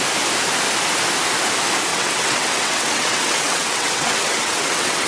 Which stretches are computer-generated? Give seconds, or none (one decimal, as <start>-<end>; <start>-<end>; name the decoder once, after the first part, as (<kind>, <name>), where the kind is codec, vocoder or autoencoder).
1.9-5.1 (vocoder, WaveNeXt)